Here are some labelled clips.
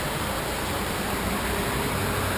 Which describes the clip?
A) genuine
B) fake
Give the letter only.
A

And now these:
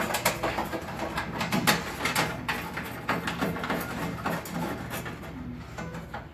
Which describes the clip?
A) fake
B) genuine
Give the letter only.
B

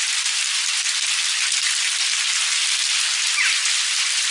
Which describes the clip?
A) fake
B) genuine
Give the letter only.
B